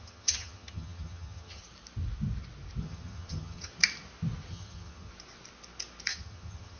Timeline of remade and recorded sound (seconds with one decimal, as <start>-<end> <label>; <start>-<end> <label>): 0.0-1.6 remade; 1.6-2.8 recorded; 2.8-3.7 remade; 3.7-4.5 recorded; 4.5-5.1 remade; 5.1-6.1 recorded; 6.1-6.8 remade